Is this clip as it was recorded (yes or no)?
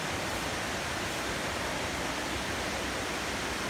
yes